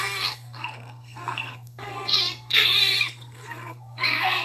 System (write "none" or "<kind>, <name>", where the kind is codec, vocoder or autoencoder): codec, SNAC